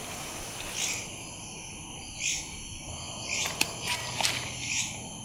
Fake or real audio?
real